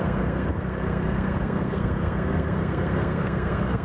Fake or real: fake